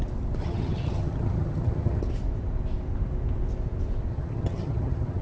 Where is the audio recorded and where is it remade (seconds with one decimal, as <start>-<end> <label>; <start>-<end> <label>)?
0.0-0.4 recorded; 0.4-2.0 remade; 2.0-4.1 recorded; 4.1-5.2 remade

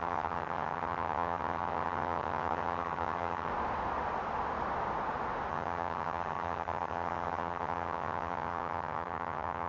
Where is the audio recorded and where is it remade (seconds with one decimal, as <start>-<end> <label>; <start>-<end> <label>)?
0.0-3.5 remade; 3.5-5.5 recorded; 5.5-9.7 remade

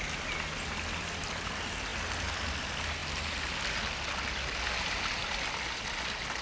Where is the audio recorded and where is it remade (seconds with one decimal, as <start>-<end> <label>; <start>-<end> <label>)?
0.0-6.4 recorded

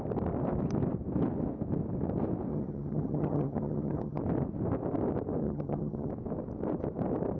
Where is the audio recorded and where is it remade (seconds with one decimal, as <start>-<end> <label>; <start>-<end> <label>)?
0.0-2.5 recorded; 2.5-4.2 remade; 4.2-5.4 recorded; 5.4-6.1 remade; 6.1-7.4 recorded

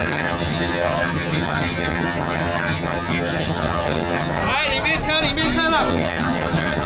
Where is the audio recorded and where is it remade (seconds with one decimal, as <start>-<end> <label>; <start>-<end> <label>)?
0.0-4.4 remade; 4.4-5.9 recorded; 5.9-6.9 remade

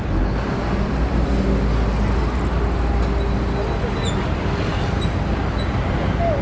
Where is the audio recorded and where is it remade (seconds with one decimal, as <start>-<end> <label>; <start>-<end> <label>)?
0.0-6.4 recorded

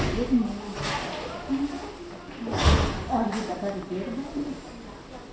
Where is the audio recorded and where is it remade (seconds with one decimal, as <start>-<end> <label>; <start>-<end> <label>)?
0.0-5.3 recorded